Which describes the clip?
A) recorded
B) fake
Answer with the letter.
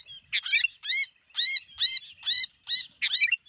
A